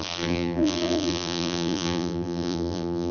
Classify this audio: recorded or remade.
remade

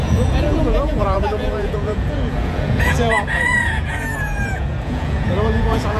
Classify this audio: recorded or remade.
remade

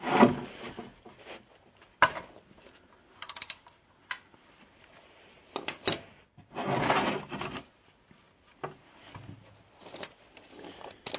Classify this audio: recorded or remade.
recorded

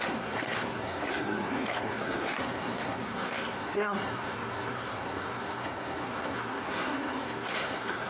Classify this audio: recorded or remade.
remade